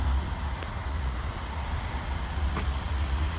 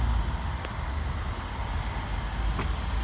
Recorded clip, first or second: second